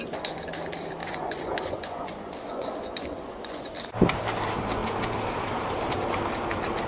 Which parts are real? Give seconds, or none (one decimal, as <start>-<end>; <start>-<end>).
0.0-1.0; 3.6-6.9